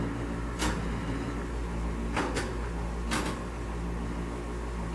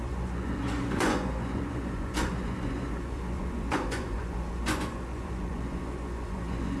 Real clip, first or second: first